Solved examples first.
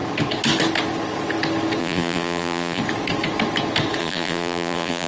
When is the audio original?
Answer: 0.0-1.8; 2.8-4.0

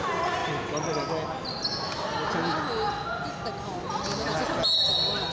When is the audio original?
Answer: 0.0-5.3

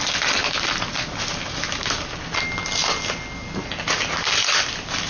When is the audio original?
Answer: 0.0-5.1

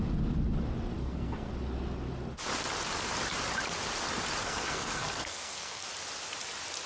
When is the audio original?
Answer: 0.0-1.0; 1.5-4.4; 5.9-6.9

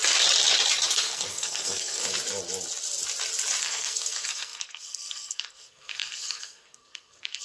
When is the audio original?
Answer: 0.0-0.9; 2.0-3.6

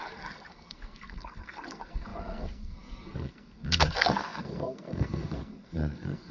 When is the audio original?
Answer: none

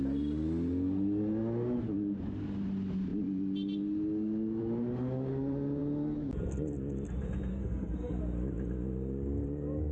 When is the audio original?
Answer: 0.0-7.5; 8.2-9.9

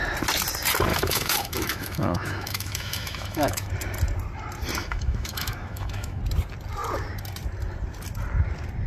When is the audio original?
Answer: 0.0-0.9; 3.7-4.8; 6.2-8.9